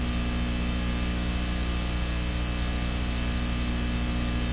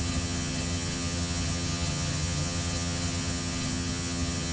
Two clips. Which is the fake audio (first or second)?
second